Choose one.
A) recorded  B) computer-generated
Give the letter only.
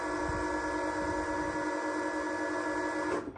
A